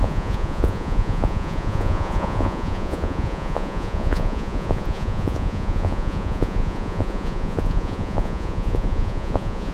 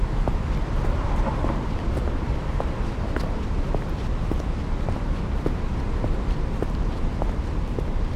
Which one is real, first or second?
second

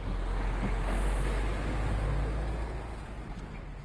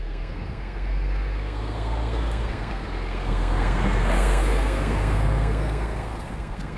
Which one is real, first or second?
first